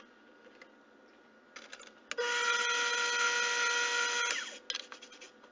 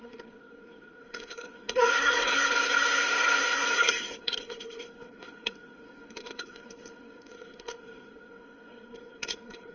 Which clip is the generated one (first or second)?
second